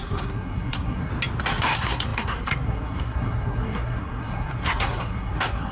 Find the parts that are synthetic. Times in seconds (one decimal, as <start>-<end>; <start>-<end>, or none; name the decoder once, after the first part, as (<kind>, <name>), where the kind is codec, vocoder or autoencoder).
0.0-1.1 (codec, SNAC); 1.6-5.7